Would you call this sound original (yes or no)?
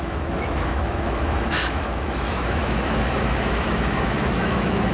no